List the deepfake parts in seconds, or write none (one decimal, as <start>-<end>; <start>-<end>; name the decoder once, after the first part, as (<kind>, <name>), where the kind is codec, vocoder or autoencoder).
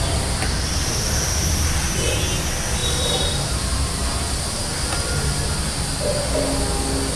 2.8-3.7 (vocoder, BigVGAN v2)